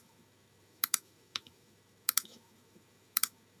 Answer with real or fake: fake